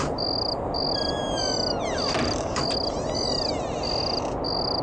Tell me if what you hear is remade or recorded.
recorded